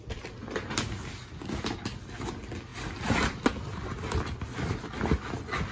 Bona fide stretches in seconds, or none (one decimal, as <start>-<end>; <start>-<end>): 0.0-5.7